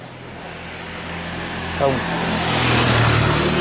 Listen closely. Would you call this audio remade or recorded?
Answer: recorded